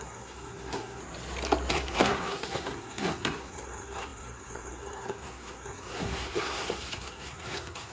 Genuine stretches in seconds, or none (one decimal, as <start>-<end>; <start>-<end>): 1.0-1.7